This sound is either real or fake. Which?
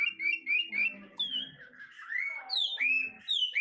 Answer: real